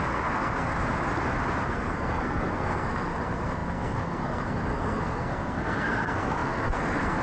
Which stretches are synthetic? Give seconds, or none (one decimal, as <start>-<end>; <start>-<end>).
0.0-0.7; 1.7-7.2